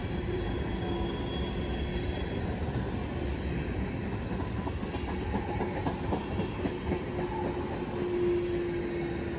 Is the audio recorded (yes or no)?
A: yes